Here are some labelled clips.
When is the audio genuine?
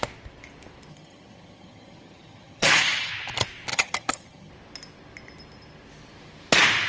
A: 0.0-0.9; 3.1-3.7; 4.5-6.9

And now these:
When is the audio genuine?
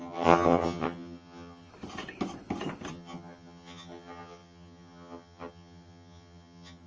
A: 1.7-2.9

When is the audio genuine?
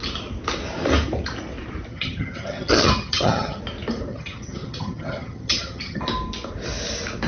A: 0.0-1.9; 3.6-4.1; 6.0-7.3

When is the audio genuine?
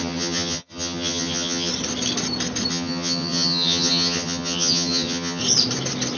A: 1.7-2.7; 5.4-6.2